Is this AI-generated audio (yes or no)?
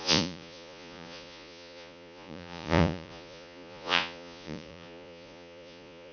yes